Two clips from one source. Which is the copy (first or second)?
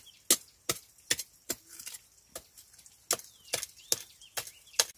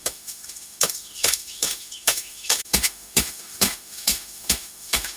second